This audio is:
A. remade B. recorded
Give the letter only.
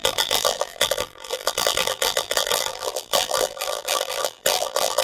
A